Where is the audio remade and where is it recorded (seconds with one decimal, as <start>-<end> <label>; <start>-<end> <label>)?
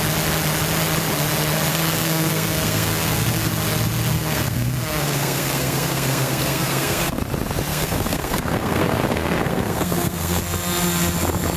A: 0.0-1.7 recorded; 1.7-3.5 remade; 3.5-4.1 recorded; 4.1-7.2 remade; 7.2-7.7 recorded; 7.7-10.4 remade; 10.4-11.6 recorded